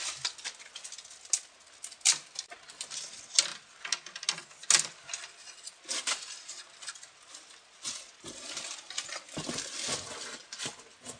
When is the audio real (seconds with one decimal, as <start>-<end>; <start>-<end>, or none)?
0.0-11.2